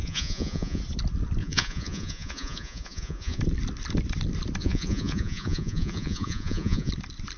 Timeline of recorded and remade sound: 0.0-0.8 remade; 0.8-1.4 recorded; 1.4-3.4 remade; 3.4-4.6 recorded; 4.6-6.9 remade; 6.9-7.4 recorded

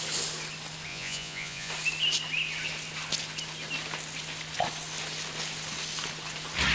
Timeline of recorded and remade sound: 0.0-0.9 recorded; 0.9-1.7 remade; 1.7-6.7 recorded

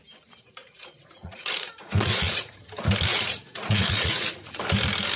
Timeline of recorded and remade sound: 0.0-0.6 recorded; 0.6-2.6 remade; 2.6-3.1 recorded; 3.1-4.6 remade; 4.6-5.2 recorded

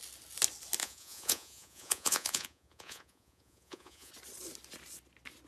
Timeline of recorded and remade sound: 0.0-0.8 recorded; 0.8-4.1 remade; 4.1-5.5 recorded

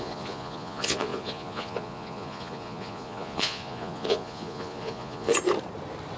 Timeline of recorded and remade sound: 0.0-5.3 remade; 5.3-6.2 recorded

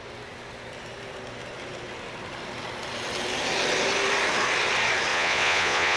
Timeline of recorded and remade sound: 0.0-5.1 recorded; 5.1-6.0 remade

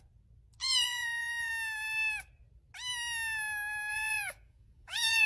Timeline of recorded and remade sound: 0.0-0.6 recorded; 0.6-1.5 remade; 1.5-3.9 recorded; 3.9-5.3 remade